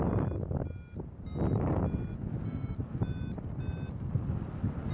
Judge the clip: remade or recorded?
recorded